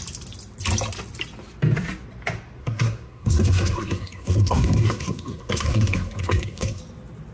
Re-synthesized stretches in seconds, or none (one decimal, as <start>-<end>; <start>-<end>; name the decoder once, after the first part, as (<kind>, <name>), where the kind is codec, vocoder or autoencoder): 2.6-6.8 (codec, SNAC)